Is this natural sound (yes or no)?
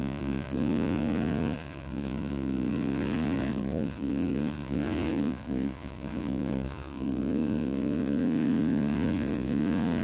no